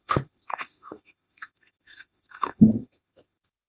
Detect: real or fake fake